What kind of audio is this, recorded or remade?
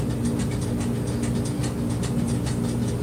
recorded